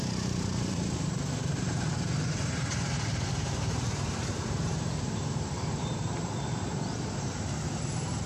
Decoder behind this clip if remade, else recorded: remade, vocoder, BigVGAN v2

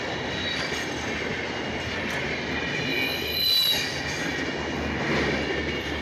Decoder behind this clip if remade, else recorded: recorded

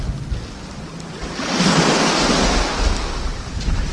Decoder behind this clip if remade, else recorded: recorded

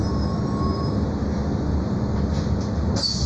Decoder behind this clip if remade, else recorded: recorded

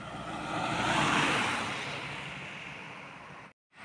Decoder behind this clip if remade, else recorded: remade, vocoder, BigVGAN v2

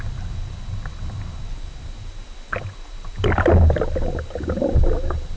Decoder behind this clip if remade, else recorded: recorded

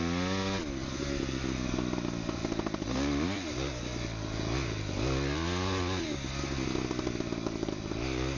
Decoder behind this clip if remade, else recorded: recorded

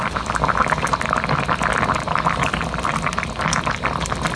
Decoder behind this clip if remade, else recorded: recorded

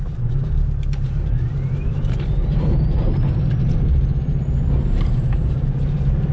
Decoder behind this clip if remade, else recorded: remade, vocoder, BigVGAN v2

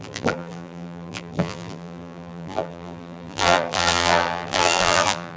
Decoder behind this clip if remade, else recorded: remade, vocoder, BigVGAN v2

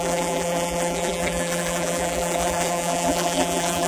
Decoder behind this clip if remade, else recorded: remade, vocoder, BigVGAN v2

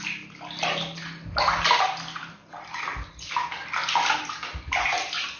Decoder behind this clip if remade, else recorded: recorded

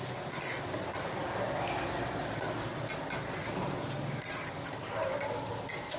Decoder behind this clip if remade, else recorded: recorded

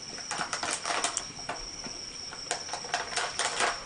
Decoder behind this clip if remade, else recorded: recorded